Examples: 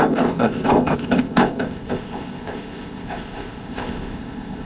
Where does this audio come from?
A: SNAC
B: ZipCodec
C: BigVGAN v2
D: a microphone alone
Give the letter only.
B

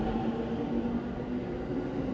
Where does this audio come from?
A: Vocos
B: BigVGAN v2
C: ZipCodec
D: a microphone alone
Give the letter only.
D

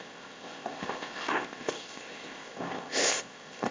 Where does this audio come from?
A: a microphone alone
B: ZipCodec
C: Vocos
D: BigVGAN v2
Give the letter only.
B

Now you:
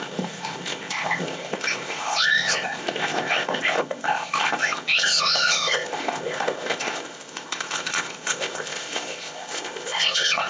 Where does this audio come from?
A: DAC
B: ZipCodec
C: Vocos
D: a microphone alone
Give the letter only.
B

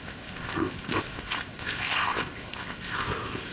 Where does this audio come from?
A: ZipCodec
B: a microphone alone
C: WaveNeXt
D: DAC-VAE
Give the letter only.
A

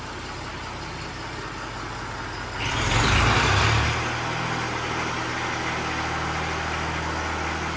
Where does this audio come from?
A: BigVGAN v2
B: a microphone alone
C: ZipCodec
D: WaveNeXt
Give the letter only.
B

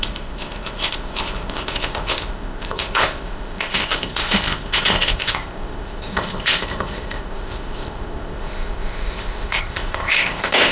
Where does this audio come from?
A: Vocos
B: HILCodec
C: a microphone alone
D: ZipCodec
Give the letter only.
D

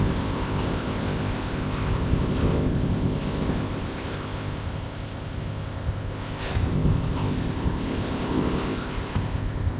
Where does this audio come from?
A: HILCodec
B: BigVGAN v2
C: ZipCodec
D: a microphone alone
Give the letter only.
C